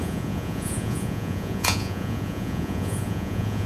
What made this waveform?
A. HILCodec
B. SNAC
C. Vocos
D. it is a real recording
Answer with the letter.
C